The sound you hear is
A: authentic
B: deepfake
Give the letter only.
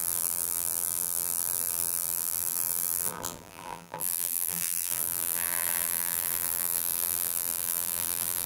B